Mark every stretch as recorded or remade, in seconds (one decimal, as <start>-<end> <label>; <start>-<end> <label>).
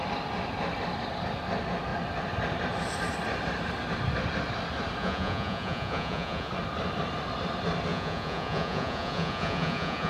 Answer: 0.0-5.0 recorded; 5.0-6.5 remade; 6.5-7.9 recorded; 7.9-10.1 remade